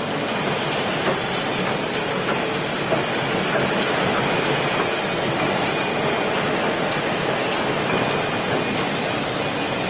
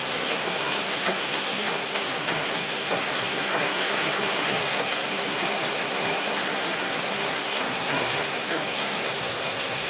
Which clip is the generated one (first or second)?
second